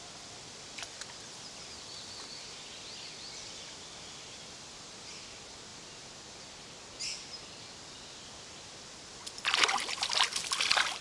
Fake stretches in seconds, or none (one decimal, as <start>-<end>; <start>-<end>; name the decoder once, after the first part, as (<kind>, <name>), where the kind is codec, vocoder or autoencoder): none